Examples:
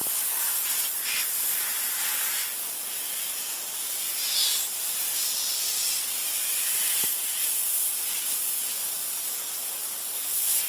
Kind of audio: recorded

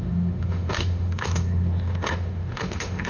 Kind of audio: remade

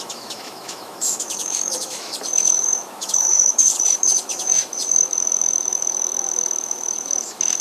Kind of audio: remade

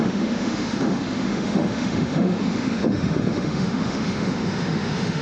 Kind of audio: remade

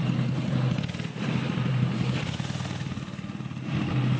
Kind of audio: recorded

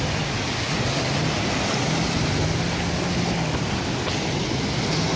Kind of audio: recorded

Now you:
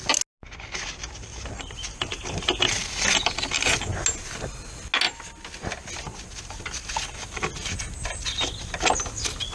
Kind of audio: recorded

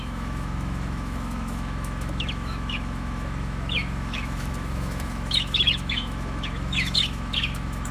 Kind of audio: remade